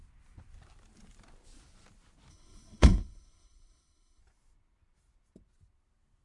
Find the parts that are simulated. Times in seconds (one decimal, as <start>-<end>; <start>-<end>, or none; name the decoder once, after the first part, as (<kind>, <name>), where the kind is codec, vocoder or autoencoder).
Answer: 2.3-4.2 (codec, HILCodec)